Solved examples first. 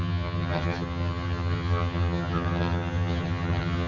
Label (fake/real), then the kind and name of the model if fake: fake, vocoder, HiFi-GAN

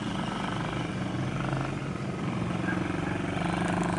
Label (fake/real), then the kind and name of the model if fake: real